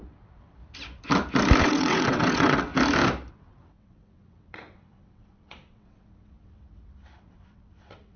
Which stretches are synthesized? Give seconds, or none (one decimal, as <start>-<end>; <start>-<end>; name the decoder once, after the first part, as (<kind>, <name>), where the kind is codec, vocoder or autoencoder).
0.0-0.6 (vocoder, WaveNeXt); 1.6-2.7; 3.3-8.2